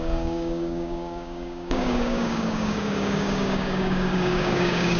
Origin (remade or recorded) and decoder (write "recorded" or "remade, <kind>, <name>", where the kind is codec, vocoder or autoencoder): remade, codec, DAC